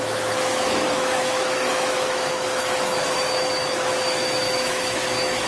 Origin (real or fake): fake